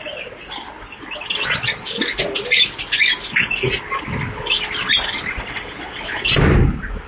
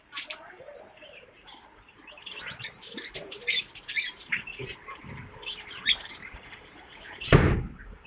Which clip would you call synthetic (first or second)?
second